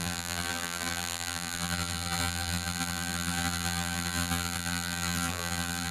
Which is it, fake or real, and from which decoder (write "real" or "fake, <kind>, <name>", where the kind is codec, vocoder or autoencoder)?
fake, vocoder, BigVGAN v2